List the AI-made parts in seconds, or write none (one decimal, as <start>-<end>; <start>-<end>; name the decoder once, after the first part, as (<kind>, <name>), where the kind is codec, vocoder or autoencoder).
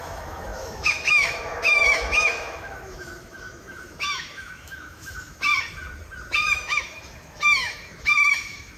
0.0-5.5 (autoencoder, DAC-VAE); 6.5-8.8